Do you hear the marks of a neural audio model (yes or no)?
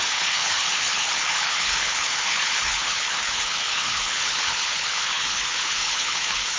yes